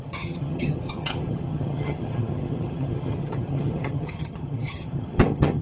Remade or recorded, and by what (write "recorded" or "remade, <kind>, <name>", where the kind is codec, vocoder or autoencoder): remade, vocoder, HiFi-GAN